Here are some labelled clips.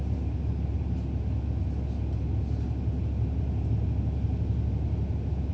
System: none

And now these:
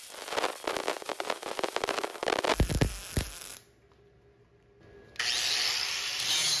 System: none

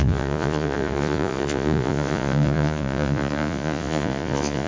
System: vocoder, Vocos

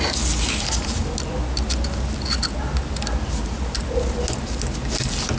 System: none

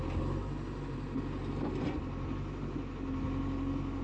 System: none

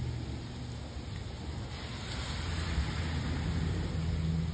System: none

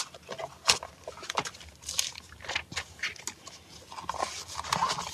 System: none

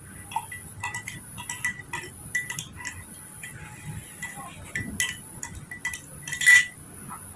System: none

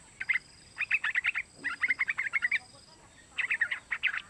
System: none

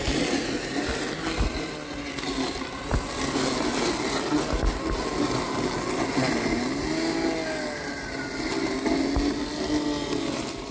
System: none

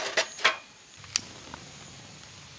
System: none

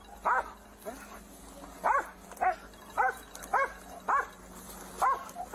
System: none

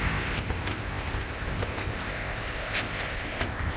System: codec, ZipCodec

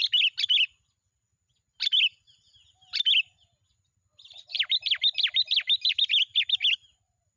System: none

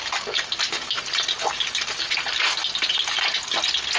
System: none